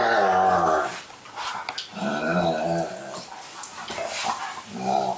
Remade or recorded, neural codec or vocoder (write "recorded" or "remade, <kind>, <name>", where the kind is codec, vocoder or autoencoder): recorded